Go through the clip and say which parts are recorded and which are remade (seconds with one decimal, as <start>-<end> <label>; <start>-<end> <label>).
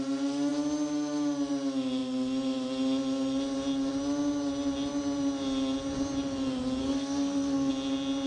0.0-6.8 recorded; 6.8-7.7 remade; 7.7-8.3 recorded